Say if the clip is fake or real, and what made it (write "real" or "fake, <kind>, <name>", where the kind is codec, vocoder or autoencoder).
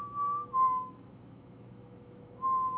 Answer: fake, autoencoder, DAC-VAE